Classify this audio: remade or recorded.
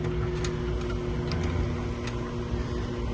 recorded